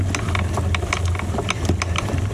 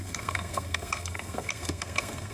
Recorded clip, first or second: first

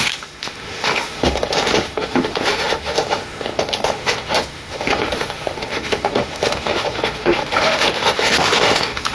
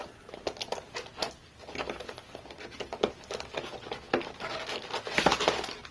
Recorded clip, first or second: second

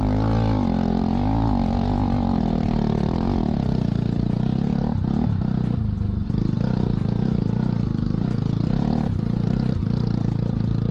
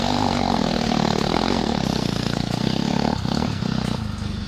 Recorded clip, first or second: first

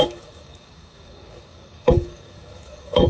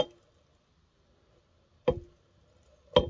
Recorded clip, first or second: second